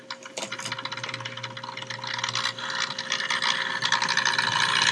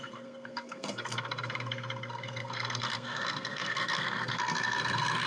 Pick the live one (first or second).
first